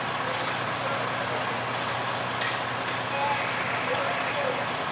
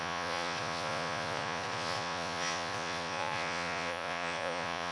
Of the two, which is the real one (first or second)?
first